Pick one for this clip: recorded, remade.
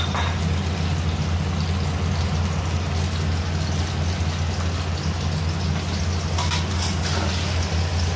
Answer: recorded